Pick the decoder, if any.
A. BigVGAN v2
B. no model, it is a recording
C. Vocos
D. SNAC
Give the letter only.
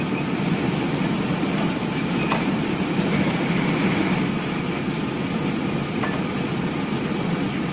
A